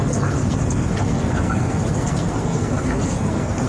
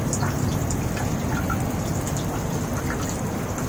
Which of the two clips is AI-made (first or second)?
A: first